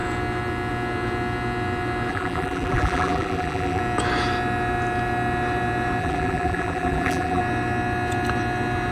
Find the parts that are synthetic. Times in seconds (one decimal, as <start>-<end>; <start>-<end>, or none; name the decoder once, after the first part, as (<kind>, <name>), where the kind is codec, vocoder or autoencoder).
2.1-3.8 (vocoder, BigVGAN v2); 6.0-7.4